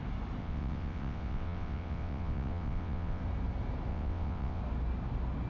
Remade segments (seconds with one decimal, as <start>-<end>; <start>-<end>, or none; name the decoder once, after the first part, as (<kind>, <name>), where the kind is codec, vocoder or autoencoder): 0.4-3.2 (vocoder, WaveNeXt); 3.9-4.6